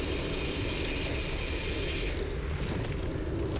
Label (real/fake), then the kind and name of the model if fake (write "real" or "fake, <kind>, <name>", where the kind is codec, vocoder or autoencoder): real